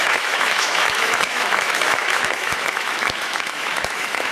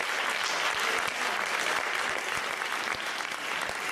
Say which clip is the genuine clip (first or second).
second